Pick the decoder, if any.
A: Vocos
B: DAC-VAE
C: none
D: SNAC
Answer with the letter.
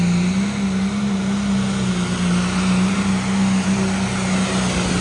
C